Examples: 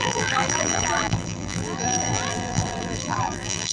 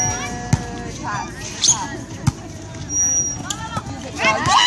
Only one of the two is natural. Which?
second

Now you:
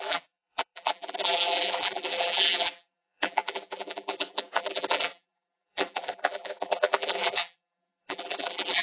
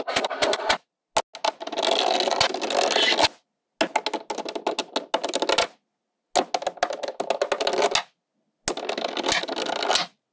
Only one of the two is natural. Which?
second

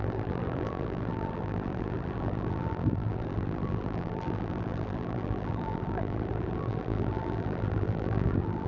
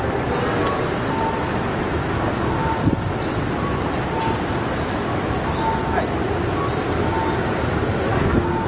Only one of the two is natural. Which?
second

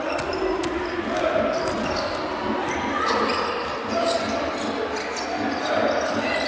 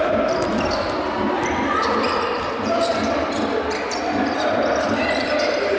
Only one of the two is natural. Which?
first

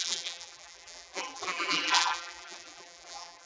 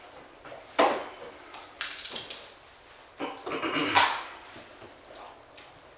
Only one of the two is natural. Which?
second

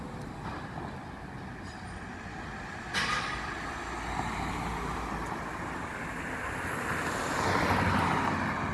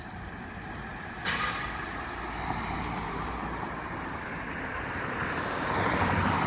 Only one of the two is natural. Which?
first